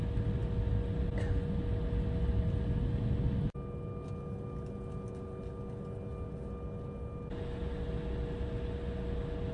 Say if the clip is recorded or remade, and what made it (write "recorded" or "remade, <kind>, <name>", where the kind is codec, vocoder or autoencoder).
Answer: recorded